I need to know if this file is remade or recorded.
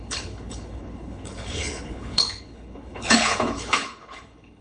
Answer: remade